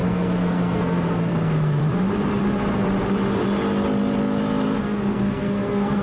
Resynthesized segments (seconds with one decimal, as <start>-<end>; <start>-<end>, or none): 0.0-1.8; 4.8-6.0